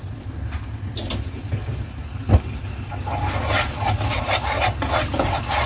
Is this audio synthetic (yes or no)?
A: no